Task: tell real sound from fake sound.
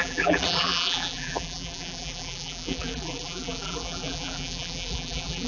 fake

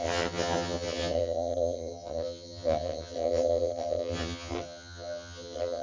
fake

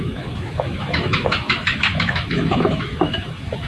fake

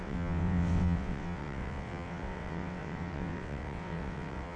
fake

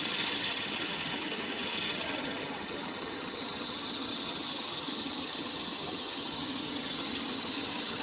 fake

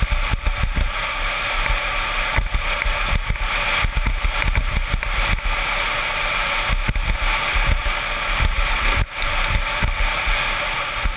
real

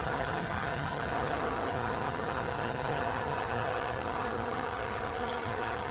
fake